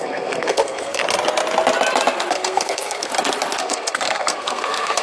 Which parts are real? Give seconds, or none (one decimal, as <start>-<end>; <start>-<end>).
1.0-2.3; 3.1-3.6